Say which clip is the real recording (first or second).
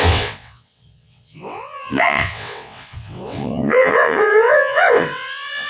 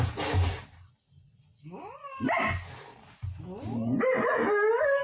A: second